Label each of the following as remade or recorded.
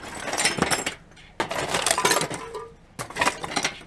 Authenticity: recorded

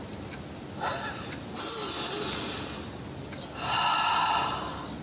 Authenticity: recorded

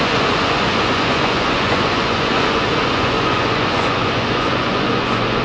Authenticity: remade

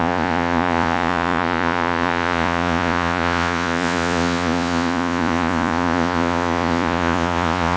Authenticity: remade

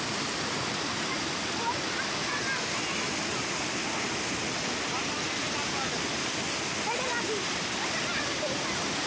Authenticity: recorded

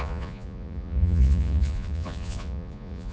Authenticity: remade